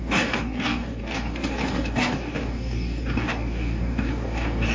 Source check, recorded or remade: remade